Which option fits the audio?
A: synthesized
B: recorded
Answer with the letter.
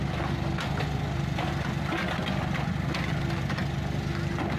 B